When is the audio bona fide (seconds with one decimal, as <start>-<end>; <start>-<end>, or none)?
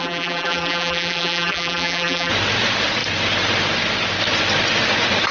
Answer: 2.3-5.3